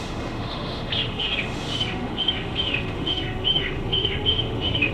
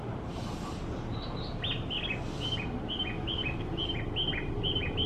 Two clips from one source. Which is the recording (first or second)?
second